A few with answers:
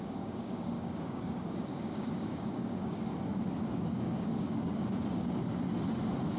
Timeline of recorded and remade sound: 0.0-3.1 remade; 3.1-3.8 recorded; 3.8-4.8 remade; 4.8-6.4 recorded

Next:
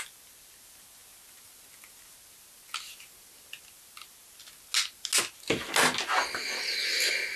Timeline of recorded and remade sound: 0.0-7.4 recorded

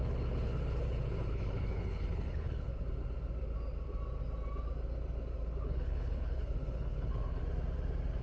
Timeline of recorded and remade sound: 0.0-2.7 remade; 2.7-5.6 recorded; 5.6-7.4 remade; 7.4-8.2 recorded